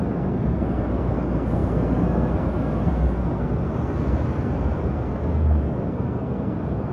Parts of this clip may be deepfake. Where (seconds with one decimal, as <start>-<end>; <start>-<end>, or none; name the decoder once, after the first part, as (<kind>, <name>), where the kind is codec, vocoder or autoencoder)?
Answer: 0.0-6.9 (codec, SNAC)